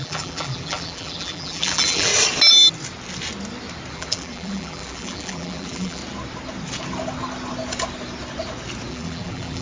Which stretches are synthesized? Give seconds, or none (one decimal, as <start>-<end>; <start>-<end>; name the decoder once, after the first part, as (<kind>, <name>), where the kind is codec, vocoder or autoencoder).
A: 0.0-2.1 (vocoder, BigVGAN v2); 3.9-6.0; 8.9-9.6